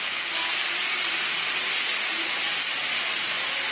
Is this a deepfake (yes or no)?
no